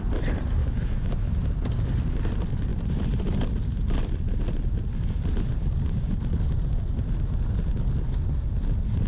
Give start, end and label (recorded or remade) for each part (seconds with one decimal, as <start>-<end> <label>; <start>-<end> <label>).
0.0-0.6 recorded; 0.6-1.3 remade; 1.3-9.1 recorded